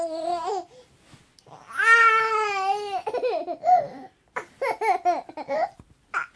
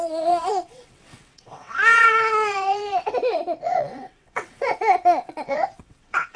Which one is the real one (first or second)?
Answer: first